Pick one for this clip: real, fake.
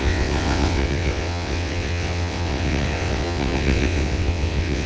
fake